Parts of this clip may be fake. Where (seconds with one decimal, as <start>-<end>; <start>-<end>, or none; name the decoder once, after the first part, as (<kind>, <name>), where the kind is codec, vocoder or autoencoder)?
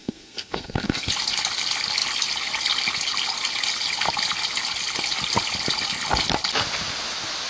0.0-1.1 (codec, SNAC)